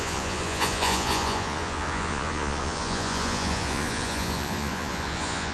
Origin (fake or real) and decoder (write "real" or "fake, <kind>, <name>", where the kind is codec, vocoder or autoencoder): fake, vocoder, Vocos